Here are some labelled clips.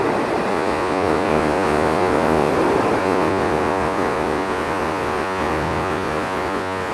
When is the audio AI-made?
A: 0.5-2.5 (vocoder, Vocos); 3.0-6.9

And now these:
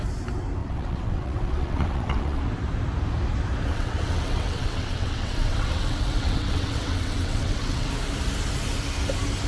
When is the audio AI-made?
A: 0.6-2.4 (vocoder, WaveNeXt); 3.7-7.9

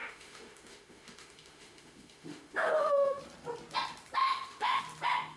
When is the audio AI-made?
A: 0.0-3.2 (autoencoder, DAC-VAE); 4.2-4.8

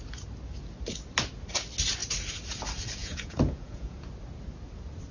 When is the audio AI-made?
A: 3.0-4.1 (vocoder, Vocos)